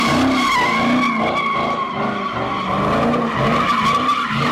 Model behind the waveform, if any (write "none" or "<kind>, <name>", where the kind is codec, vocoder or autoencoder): none